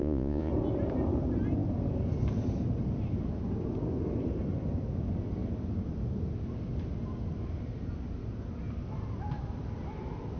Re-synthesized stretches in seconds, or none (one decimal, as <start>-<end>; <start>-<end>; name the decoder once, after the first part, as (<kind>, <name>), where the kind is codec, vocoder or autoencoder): 0.0-0.5 (vocoder, Vocos)